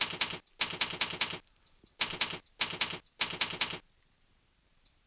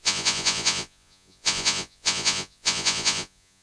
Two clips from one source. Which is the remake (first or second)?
second